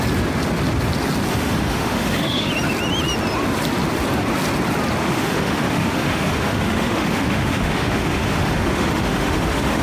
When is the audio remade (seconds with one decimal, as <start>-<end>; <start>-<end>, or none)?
1.3-2.5; 5.0-9.8